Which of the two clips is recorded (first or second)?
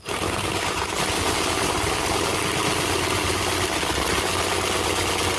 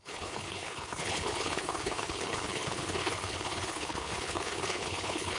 first